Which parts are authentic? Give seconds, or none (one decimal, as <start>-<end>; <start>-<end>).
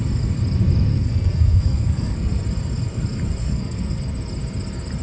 0.0-0.9; 2.4-3.4; 4.0-5.0